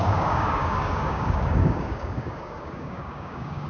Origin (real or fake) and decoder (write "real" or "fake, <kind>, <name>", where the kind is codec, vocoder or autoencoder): fake, codec, DAC